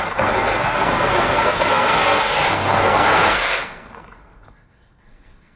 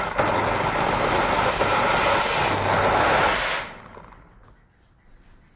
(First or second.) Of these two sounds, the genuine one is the second